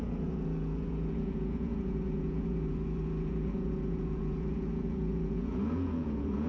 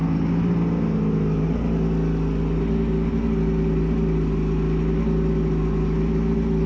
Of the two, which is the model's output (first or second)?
first